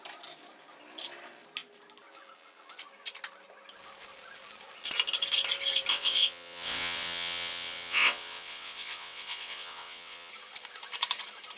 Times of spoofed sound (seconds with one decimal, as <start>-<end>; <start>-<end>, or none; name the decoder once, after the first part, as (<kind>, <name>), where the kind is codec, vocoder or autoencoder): 5.9-10.3 (vocoder, WaveNeXt)